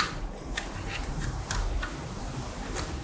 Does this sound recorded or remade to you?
recorded